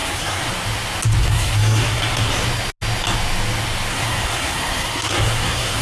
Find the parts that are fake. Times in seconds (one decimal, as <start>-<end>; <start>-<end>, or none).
0.0-0.5; 1.2-2.3; 3.9-5.8